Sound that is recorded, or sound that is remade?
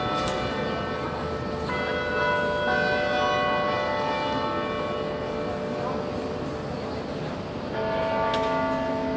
recorded